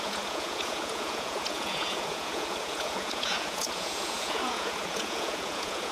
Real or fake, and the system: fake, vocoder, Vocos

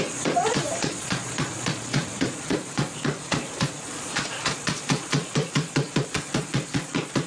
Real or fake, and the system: fake, vocoder, Vocos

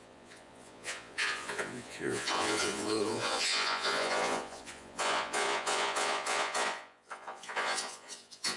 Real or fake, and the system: fake, vocoder, Vocos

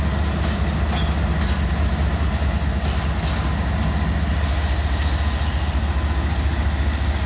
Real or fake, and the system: real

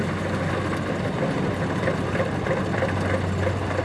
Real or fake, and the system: real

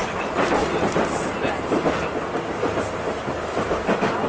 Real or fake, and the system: real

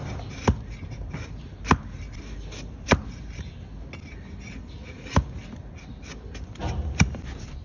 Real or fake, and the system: real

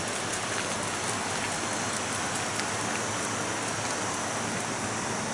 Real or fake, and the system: real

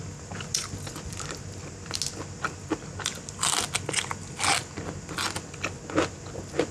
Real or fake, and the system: real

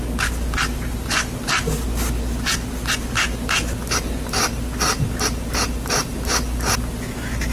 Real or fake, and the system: real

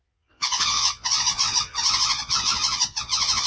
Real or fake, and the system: fake, vocoder, Vocos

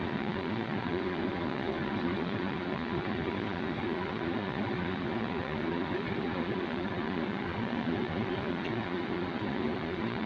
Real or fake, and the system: fake, vocoder, Vocos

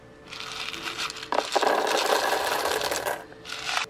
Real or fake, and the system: real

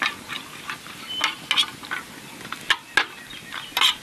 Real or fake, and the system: real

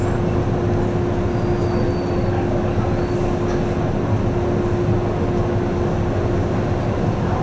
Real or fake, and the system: real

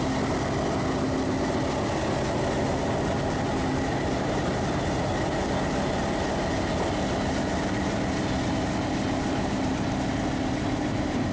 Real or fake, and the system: real